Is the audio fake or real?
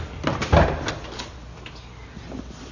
real